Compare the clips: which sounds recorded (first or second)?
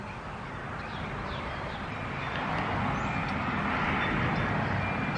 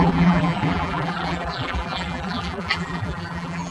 first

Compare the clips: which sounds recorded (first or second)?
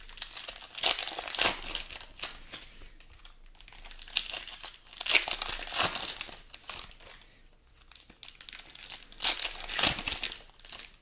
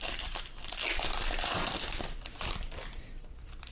first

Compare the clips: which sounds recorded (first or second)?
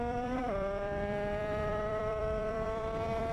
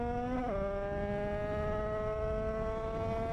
second